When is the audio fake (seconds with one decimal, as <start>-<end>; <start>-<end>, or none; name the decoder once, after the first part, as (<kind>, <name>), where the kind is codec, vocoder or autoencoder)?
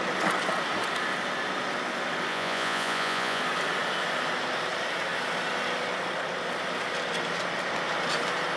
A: 2.3-3.4 (vocoder, Vocos)